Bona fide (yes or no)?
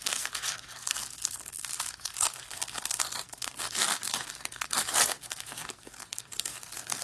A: no